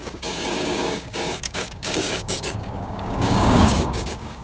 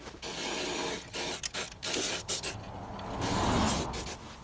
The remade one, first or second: first